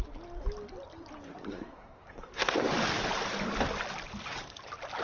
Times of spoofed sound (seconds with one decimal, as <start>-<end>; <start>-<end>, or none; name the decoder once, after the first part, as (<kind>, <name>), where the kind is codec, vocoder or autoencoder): 1.5-2.5 (codec, SNAC)